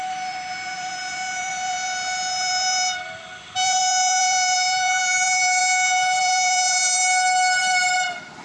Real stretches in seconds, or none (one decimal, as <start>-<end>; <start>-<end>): 5.6-6.2; 7.0-7.6